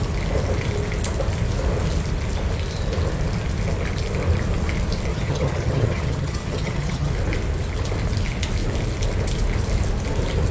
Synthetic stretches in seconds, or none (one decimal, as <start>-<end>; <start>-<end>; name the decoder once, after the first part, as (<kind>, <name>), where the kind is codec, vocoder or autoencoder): 5.1-7.1 (vocoder, HiFi-GAN)